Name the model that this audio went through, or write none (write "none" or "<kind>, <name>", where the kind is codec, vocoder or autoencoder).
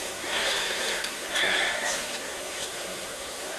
codec, SNAC